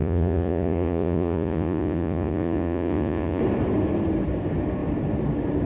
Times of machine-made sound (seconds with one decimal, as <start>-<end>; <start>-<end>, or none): 0.0-3.4